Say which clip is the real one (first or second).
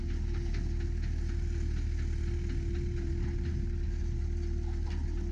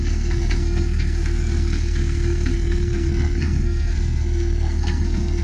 first